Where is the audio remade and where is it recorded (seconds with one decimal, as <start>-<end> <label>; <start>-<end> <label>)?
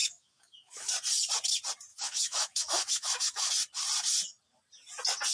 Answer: 0.0-0.9 remade; 0.9-1.9 recorded; 1.9-3.5 remade; 3.5-5.3 recorded